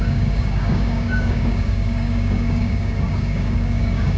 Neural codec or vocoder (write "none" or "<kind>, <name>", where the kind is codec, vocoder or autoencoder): codec, DAC